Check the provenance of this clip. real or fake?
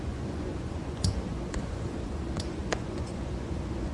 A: fake